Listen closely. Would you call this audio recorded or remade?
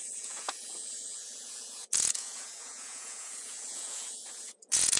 remade